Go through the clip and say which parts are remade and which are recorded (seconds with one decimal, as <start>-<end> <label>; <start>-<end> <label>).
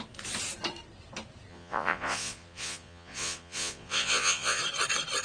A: 0.0-1.5 recorded; 1.5-4.6 remade; 4.6-5.2 recorded